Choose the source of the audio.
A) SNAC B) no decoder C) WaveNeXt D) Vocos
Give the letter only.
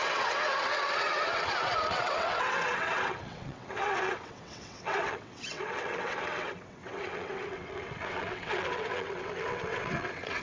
C